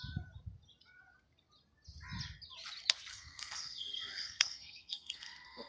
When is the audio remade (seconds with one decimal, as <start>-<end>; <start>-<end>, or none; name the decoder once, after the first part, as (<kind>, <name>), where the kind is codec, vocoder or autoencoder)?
3.1-5.7 (codec, SNAC)